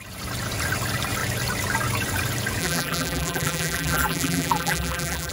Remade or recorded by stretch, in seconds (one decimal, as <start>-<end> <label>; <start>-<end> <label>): 0.0-2.6 recorded; 2.6-5.3 remade